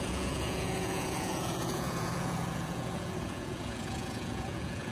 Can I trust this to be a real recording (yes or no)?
no